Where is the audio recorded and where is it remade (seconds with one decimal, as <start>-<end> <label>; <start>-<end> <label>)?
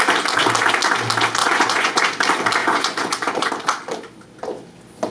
0.0-1.4 recorded; 1.4-2.0 remade; 2.0-2.6 recorded; 2.6-3.5 remade; 3.5-5.1 recorded